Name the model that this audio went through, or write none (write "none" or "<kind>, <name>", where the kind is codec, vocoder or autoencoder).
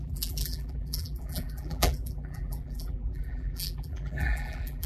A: vocoder, BigVGAN v2